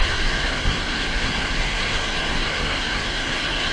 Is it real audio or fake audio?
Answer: fake